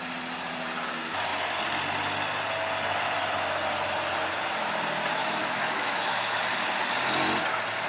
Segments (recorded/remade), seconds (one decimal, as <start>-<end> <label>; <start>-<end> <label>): 0.0-5.2 recorded; 5.2-6.4 remade; 6.4-7.9 recorded